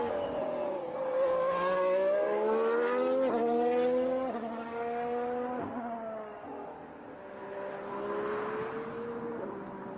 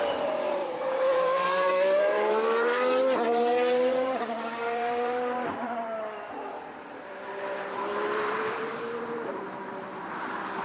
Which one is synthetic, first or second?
second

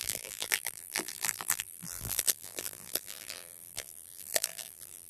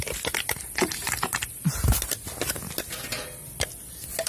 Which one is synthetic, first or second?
first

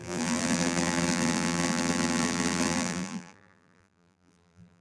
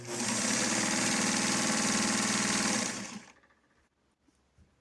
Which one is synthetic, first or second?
first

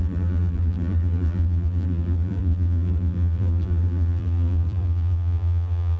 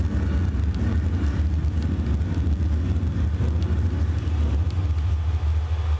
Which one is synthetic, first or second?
first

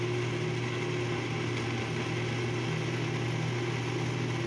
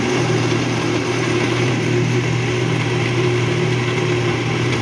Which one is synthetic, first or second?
second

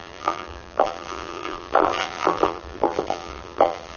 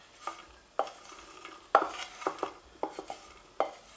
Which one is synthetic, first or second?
first